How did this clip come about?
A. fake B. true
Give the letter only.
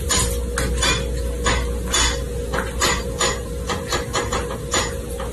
B